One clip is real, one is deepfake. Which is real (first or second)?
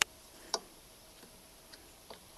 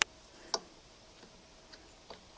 second